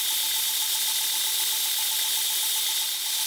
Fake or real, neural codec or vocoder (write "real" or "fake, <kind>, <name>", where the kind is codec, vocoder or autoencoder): real